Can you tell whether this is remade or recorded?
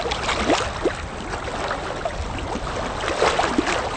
recorded